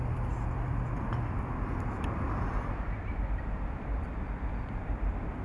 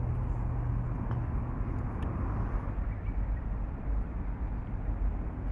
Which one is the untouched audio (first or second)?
second